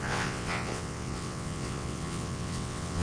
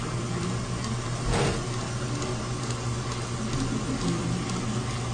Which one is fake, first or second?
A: first